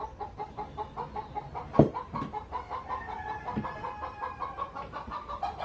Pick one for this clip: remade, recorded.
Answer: recorded